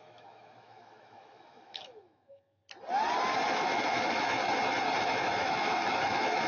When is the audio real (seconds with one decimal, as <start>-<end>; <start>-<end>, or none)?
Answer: 2.6-3.5; 4.4-5.0